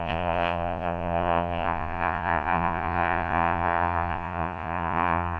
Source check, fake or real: fake